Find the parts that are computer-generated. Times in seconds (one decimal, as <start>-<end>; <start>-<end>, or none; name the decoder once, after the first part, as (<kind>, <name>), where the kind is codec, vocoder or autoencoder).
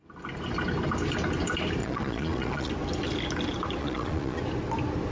1.8-2.7 (vocoder, Vocos); 3.8-4.4